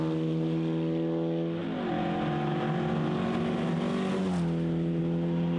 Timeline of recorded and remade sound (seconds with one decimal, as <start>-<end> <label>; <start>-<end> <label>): 0.0-5.6 recorded